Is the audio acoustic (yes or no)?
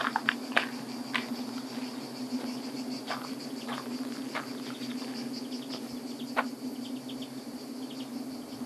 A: yes